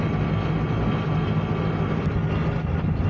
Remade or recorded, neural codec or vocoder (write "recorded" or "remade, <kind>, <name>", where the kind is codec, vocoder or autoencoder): recorded